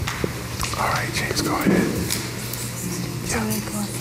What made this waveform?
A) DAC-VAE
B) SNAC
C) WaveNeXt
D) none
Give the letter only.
D